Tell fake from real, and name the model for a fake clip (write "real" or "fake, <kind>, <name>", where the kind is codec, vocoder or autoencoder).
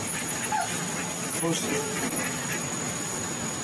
real